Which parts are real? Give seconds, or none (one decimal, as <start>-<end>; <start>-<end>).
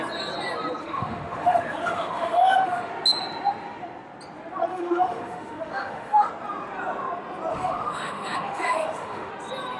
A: 0.0-0.8; 2.9-4.7; 6.3-7.5; 9.3-9.8